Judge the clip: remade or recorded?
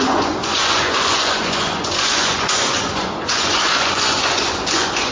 remade